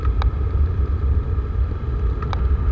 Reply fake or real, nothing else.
real